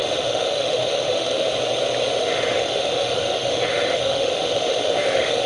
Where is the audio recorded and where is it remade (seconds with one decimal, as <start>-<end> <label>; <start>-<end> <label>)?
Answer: 0.0-1.5 remade; 1.5-2.2 recorded; 2.2-5.5 remade